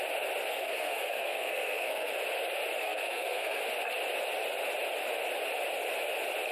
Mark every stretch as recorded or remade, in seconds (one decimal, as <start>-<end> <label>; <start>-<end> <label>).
0.0-0.5 recorded; 0.5-2.1 remade; 2.1-2.8 recorded; 2.8-3.6 remade; 3.6-6.5 recorded